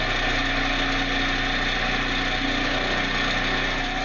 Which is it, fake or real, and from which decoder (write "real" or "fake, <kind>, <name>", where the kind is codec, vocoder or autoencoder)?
real